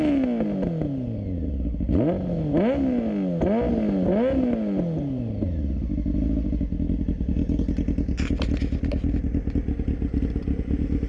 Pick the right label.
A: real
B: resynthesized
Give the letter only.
A